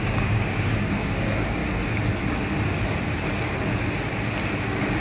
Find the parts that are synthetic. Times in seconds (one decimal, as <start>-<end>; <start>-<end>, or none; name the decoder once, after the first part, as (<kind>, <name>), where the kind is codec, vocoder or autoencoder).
0.0-1.6 (codec, DAC); 4.6-5.0